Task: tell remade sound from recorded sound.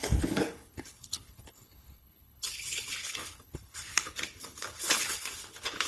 remade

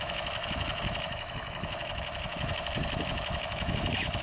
remade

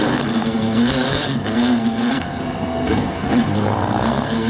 remade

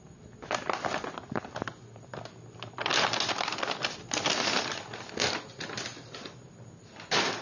recorded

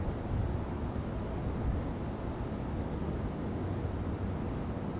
recorded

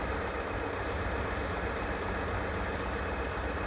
recorded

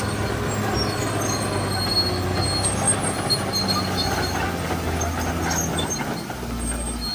recorded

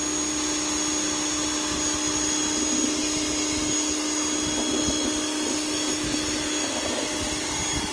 recorded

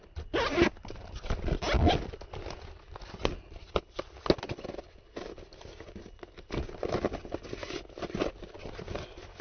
recorded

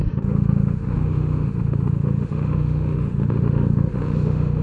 remade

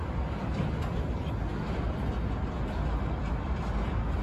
recorded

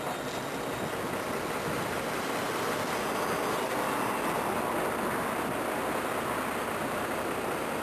recorded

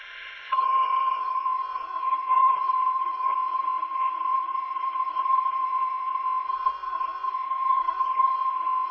remade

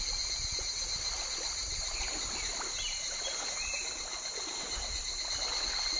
recorded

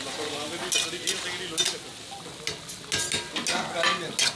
recorded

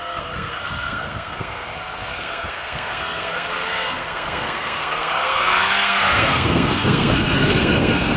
remade